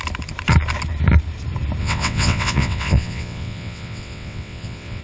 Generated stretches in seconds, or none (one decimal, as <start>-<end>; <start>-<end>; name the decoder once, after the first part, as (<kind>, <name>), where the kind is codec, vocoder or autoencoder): 1.8-5.0 (vocoder, WaveNeXt)